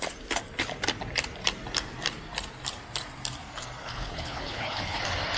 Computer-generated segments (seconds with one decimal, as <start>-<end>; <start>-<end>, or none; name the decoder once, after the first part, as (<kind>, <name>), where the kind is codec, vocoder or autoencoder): 3.8-5.0 (codec, HILCodec)